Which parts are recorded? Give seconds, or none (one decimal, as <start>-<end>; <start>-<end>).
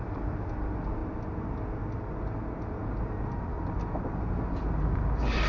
0.0-5.5